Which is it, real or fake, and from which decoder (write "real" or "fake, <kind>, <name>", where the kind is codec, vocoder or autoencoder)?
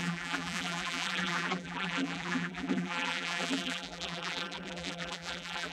fake, vocoder, BigVGAN v2